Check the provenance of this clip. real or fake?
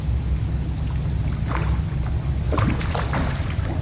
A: real